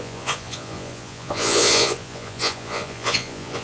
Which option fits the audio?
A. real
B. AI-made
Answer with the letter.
B